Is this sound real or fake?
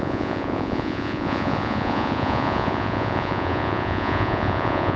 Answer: fake